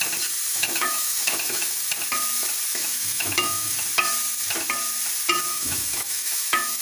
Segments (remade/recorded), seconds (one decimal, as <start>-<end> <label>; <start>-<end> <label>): 0.0-0.5 recorded; 0.5-1.8 remade; 1.8-2.7 recorded; 2.7-3.8 remade; 3.8-5.5 recorded; 5.5-6.8 remade